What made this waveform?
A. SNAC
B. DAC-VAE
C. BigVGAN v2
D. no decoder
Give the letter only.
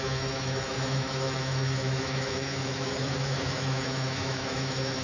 B